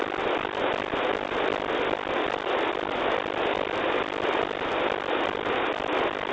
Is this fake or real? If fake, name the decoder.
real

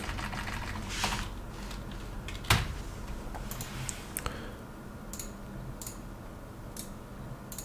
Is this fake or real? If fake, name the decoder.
real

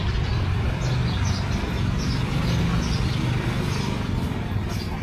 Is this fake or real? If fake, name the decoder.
real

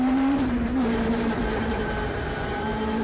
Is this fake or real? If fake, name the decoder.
fake, vocoder, BigVGAN v2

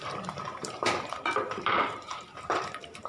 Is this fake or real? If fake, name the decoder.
fake, vocoder, BigVGAN v2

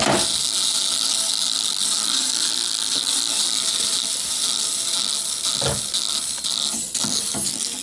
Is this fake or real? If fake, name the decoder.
real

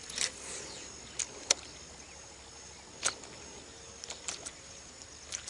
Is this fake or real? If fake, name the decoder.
real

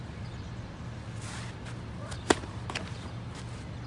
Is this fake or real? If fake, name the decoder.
real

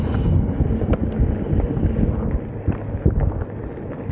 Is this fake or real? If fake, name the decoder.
real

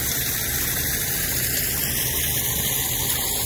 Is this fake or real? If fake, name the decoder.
real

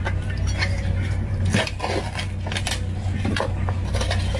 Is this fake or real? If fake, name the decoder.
real